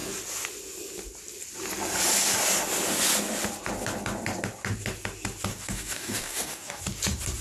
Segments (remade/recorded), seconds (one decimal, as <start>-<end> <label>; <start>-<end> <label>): 0.0-5.5 recorded; 5.5-6.8 remade; 6.8-7.4 recorded